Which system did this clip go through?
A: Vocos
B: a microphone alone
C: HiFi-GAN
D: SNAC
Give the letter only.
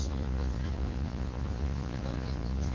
A